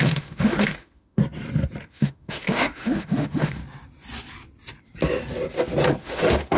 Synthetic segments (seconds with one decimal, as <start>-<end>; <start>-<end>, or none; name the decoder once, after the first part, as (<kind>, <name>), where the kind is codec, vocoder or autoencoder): 0.0-1.2 (autoencoder, DAC-VAE); 1.9-3.6; 6.0-6.6

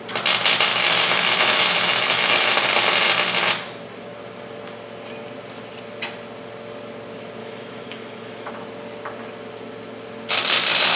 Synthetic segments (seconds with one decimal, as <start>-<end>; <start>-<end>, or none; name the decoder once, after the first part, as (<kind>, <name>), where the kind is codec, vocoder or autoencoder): 0.7-2.5 (autoencoder, DAC-VAE); 7.4-8.5